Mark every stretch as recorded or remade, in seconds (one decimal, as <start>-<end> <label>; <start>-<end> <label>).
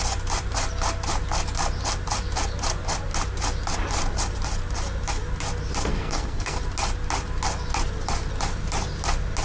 0.0-5.9 recorded; 5.9-6.6 remade; 6.6-9.4 recorded